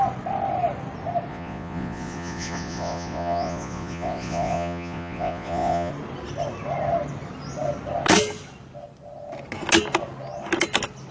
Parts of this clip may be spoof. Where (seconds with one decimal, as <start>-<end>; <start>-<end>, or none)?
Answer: 1.3-5.9